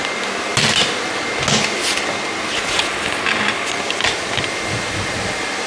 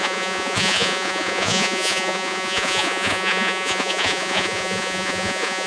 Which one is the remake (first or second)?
second